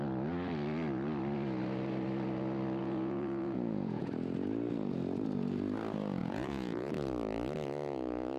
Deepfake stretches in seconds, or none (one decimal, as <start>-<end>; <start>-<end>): 2.8-4.1; 6.2-6.9